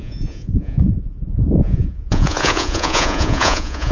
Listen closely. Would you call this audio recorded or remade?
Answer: remade